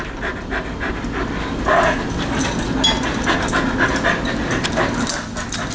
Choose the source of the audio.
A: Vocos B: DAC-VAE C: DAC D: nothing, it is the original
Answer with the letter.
D